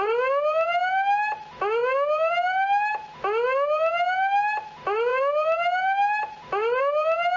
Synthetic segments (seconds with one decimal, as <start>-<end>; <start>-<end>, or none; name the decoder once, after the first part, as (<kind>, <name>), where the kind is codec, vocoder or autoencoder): none